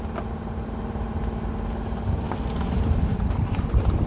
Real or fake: real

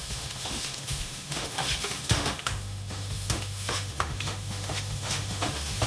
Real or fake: fake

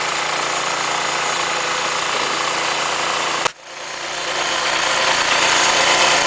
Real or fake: real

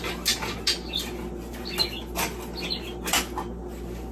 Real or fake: real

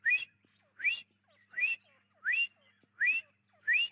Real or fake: real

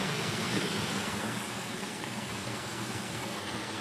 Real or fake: fake